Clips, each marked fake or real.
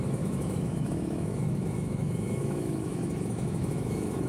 fake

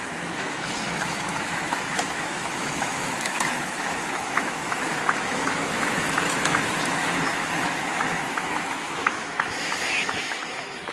fake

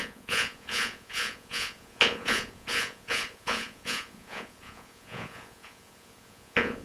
fake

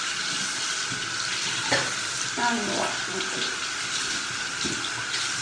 real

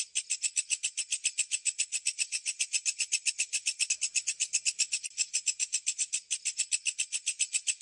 real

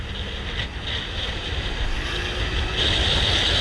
real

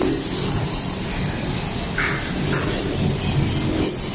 real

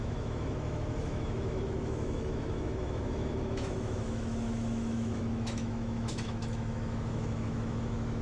fake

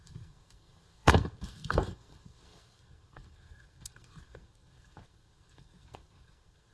fake